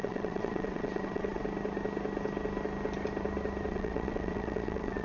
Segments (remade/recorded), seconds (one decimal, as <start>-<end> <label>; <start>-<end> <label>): 0.0-1.4 remade; 1.4-3.7 recorded; 3.7-5.0 remade